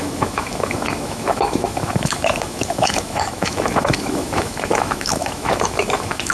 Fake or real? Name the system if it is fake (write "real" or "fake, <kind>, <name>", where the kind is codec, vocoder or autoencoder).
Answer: fake, autoencoder, DAC-VAE